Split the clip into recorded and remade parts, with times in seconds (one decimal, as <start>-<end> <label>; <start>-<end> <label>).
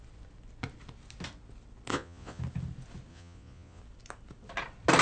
0.0-1.9 recorded; 1.9-2.4 remade; 2.4-3.1 recorded; 3.1-3.8 remade; 3.8-5.0 recorded